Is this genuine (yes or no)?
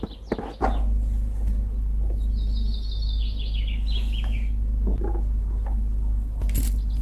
yes